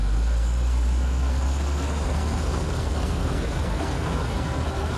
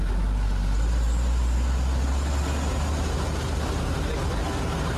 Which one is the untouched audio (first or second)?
second